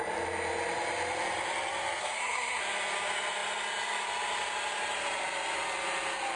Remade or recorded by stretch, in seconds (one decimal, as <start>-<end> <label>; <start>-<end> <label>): 0.0-2.0 recorded; 2.0-2.6 remade; 2.6-6.4 recorded